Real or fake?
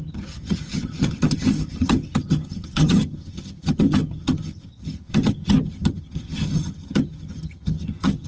fake